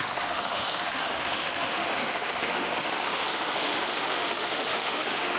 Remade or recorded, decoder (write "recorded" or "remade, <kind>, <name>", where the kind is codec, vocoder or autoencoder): remade, autoencoder, DAC-VAE